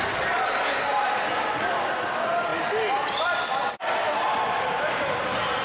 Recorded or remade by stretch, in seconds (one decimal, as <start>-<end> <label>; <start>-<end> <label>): 0.0-5.6 recorded